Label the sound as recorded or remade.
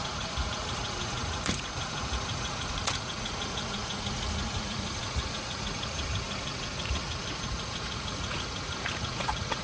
remade